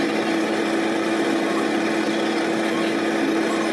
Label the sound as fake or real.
real